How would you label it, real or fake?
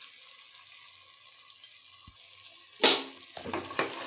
real